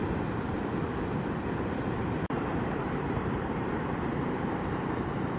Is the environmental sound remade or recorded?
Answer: remade